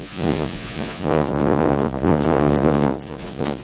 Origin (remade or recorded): remade